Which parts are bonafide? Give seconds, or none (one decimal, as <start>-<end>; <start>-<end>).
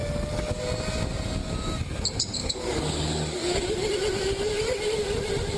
0.6-1.4; 2.0-2.4; 3.9-5.6